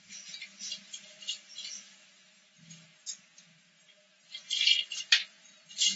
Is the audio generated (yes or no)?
no